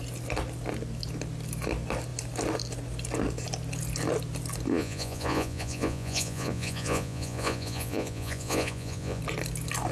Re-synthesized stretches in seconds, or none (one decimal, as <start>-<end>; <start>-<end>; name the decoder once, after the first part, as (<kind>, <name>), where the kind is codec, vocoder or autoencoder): 4.7-9.2 (vocoder, Vocos)